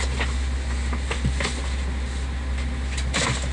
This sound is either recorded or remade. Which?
recorded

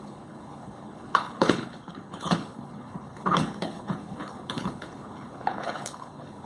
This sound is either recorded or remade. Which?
remade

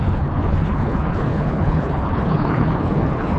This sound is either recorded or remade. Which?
remade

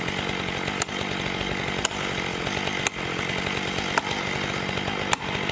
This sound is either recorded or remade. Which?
recorded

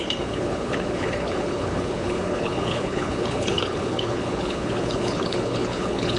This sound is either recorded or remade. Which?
remade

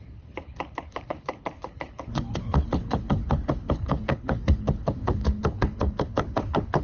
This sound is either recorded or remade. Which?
remade